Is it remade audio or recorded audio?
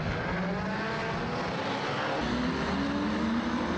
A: recorded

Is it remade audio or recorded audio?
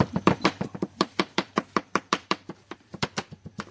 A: remade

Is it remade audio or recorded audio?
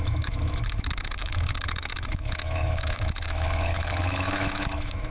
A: remade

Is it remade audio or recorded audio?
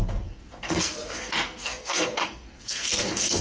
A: remade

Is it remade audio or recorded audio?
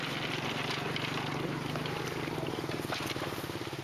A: recorded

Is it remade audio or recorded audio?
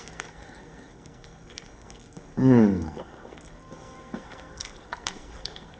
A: remade